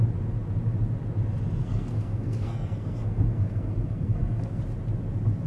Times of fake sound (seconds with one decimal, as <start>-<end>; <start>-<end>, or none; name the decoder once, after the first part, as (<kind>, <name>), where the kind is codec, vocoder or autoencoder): 1.6-4.6 (codec, SNAC)